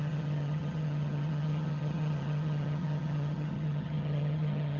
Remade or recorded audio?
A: remade